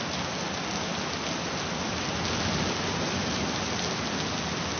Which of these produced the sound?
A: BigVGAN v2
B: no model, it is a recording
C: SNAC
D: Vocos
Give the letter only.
B